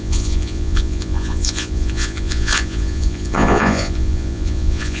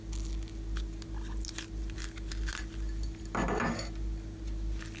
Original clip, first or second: second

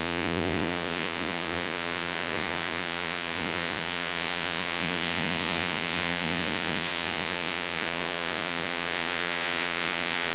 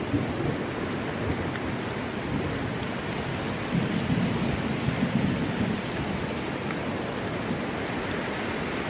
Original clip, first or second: second